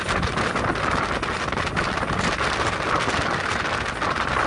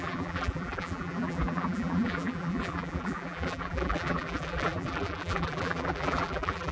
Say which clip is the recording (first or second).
first